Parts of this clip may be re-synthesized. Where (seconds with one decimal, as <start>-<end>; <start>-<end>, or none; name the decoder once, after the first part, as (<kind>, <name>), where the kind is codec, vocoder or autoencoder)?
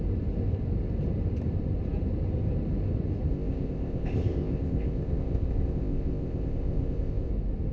3.3-7.3 (codec, ZipCodec)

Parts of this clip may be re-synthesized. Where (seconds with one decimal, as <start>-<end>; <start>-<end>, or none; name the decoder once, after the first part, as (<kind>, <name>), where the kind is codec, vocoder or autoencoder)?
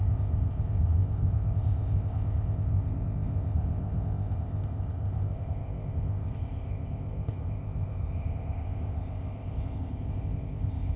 0.0-11.0 (codec, ZipCodec)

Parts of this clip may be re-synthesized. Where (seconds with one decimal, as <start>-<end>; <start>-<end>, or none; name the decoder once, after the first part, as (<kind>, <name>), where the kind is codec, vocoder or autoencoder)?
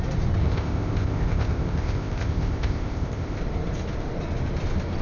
0.4-3.4 (codec, ZipCodec)